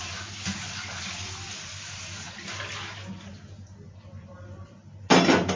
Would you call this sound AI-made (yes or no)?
no